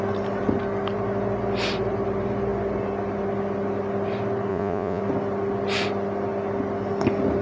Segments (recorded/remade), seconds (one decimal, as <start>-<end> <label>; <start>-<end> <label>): 0.0-4.5 recorded; 4.5-5.0 remade; 5.0-7.4 recorded